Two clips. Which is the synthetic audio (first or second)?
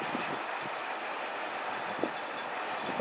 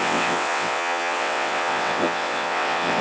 second